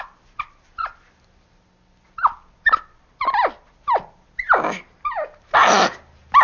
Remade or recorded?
recorded